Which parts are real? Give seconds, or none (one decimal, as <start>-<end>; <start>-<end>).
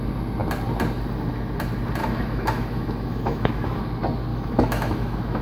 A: 0.0-2.0; 3.8-4.3